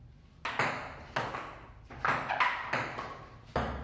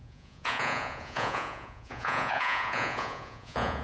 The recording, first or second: first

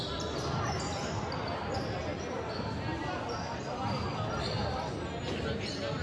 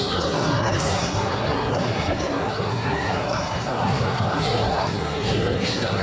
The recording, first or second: first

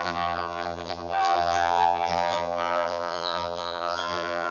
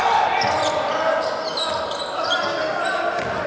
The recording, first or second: second